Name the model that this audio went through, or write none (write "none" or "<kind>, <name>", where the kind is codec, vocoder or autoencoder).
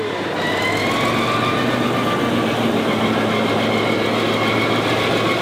none